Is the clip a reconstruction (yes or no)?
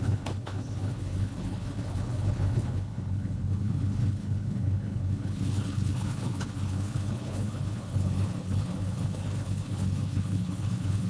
yes